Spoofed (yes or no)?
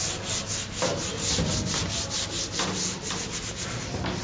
no